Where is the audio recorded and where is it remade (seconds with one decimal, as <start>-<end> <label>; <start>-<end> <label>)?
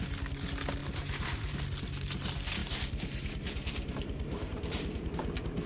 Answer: 0.0-0.8 recorded; 0.8-1.6 remade; 1.6-2.6 recorded; 2.6-5.1 remade; 5.1-5.7 recorded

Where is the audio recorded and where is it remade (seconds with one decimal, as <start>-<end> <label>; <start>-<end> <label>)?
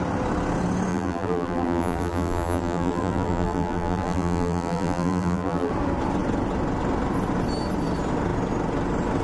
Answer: 0.0-0.9 recorded; 0.9-5.7 remade; 5.7-9.2 recorded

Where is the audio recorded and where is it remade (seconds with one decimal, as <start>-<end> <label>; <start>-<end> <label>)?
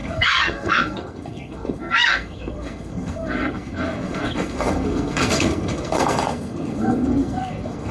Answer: 0.0-7.9 remade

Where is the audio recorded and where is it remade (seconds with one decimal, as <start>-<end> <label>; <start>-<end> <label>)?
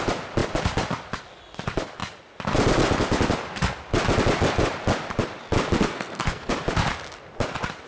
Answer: 0.0-5.8 recorded; 5.8-6.5 remade; 6.5-7.9 recorded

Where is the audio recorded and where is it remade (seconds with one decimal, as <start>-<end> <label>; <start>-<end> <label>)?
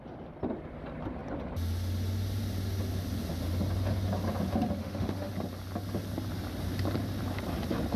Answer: 0.0-4.8 recorded; 4.8-5.3 remade; 5.3-8.0 recorded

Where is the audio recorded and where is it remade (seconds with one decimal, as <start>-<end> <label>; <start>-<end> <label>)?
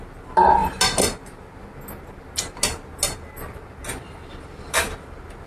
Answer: 0.0-5.5 recorded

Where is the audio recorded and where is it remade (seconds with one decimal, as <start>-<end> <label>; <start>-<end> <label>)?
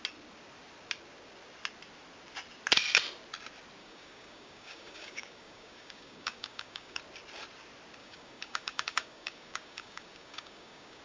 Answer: 0.0-3.8 recorded; 3.8-7.0 remade; 7.0-8.0 recorded; 8.0-11.0 remade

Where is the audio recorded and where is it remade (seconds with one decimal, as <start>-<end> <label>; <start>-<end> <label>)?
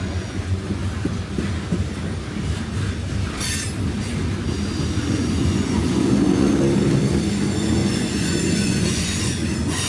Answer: 0.0-0.8 remade; 0.8-5.1 recorded; 5.1-6.5 remade; 6.5-7.3 recorded; 7.3-9.9 remade